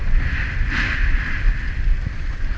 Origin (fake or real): real